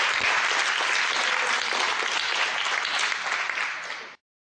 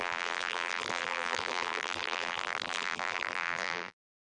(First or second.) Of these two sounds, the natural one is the first